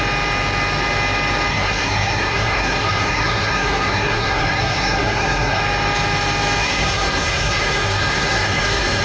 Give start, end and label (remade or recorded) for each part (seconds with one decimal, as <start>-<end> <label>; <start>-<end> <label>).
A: 0.0-1.5 recorded; 1.5-5.6 remade; 5.6-6.6 recorded; 6.6-9.0 remade